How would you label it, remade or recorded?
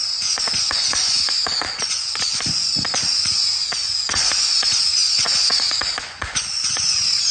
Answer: remade